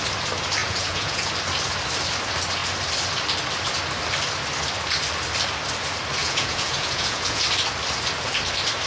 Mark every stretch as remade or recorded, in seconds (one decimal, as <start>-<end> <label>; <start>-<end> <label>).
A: 0.0-0.6 recorded; 0.6-1.3 remade; 1.3-6.2 recorded; 6.2-7.4 remade; 7.4-8.9 recorded